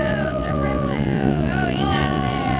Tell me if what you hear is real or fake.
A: fake